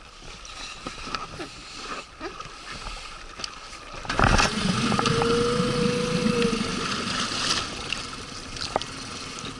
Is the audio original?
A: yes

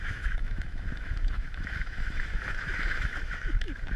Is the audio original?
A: no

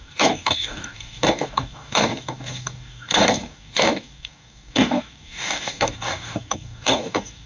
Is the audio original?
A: no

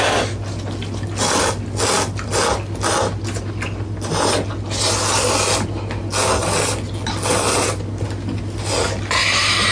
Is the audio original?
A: yes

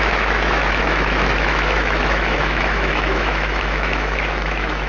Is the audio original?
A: no